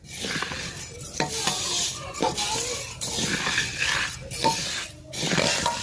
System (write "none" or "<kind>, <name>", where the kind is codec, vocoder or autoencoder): none